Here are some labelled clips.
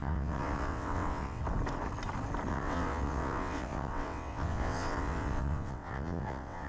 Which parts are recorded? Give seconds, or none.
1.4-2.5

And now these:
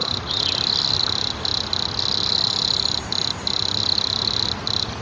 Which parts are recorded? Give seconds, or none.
0.0-5.0

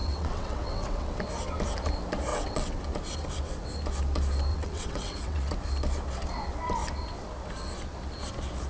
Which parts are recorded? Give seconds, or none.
1.2-2.3; 2.8-4.5; 5.5-8.7

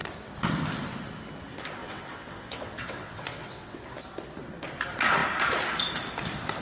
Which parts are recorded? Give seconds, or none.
0.0-1.8; 3.8-6.6

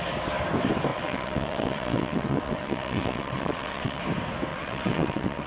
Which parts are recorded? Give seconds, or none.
0.0-0.9; 4.0-4.5

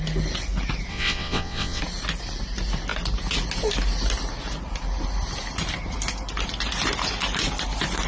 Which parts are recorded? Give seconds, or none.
0.0-0.9; 1.8-8.1

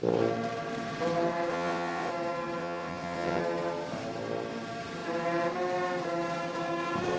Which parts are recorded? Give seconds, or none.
0.0-1.5; 2.1-2.6; 3.4-7.2

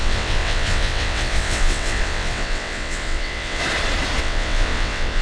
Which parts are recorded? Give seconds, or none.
3.6-4.2